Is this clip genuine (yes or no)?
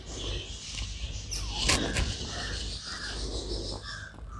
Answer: yes